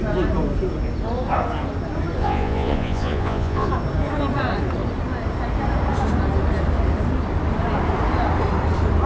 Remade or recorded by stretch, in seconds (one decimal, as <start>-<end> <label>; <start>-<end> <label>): 0.0-2.2 recorded; 2.2-3.7 remade; 3.7-9.1 recorded